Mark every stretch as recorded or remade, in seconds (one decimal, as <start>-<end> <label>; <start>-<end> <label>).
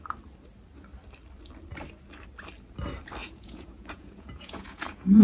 0.0-3.2 recorded; 3.2-5.2 remade